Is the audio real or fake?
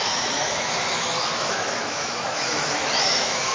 fake